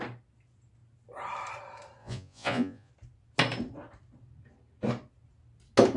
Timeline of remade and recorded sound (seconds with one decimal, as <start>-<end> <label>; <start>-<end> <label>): 0.0-2.0 recorded; 2.0-2.9 remade; 2.9-6.0 recorded